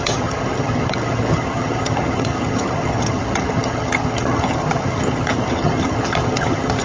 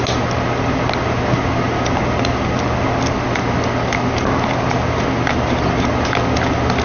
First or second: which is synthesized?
first